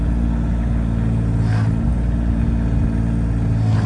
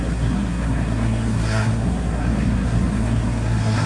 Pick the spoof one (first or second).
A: second